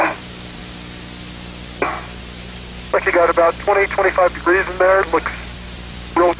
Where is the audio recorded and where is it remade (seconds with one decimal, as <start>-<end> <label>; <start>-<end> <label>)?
0.0-0.6 remade; 0.6-2.2 recorded; 2.2-6.4 remade